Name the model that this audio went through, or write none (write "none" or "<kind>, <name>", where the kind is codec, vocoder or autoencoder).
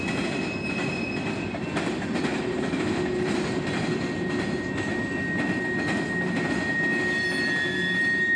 none